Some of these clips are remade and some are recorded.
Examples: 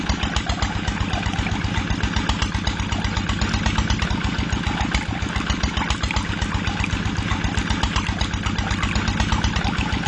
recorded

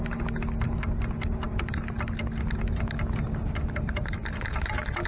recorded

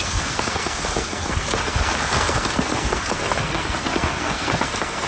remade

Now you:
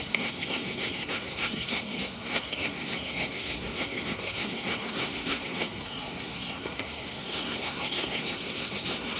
remade